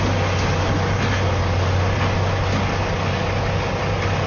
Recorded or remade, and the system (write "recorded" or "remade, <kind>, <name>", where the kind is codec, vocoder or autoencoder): recorded